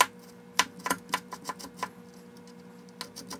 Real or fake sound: real